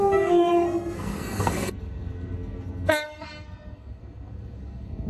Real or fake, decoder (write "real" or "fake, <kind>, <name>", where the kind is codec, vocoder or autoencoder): fake, codec, SNAC